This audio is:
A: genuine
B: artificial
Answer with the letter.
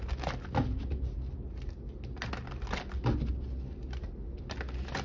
A